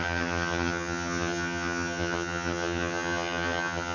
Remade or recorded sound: remade